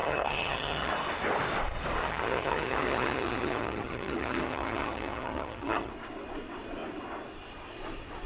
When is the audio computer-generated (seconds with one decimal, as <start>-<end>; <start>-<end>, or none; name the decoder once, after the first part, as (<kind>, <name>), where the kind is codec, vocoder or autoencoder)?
0.0-0.9 (vocoder, HiFi-GAN); 2.0-5.9